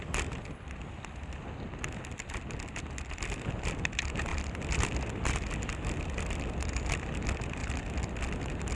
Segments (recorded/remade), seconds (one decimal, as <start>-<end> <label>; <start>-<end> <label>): 0.0-4.3 recorded; 4.3-6.7 remade; 6.7-8.8 recorded